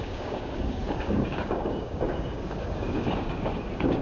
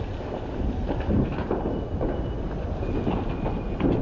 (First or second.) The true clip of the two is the second